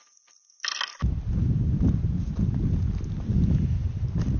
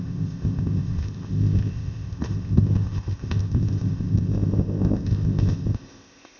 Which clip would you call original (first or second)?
first